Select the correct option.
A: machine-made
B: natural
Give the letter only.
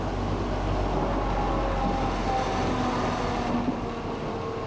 B